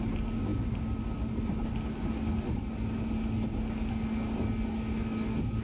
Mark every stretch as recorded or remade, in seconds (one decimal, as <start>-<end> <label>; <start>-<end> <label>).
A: 0.0-5.6 recorded